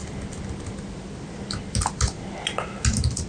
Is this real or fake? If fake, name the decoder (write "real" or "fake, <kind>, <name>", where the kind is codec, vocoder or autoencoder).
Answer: real